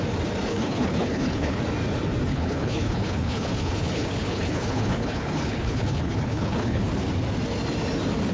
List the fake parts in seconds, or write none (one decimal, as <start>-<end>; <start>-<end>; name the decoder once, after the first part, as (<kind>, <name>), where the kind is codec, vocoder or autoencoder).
0.5-1.6 (codec, HILCodec); 2.3-6.8